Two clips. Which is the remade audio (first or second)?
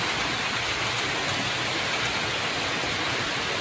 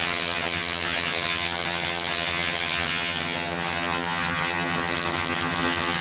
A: second